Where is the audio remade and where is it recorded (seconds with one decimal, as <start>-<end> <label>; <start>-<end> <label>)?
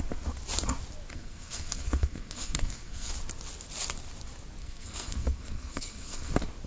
0.0-1.1 recorded; 1.1-3.1 remade; 3.1-4.6 recorded; 4.6-6.3 remade; 6.3-6.7 recorded